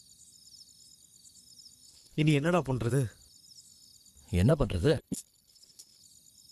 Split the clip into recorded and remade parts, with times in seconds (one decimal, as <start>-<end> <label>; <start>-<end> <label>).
0.0-1.9 recorded; 1.9-2.9 remade; 2.9-4.5 recorded; 4.5-6.0 remade; 6.0-6.5 recorded